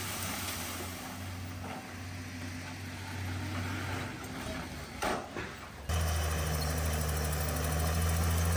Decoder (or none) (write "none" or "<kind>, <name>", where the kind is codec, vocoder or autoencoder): none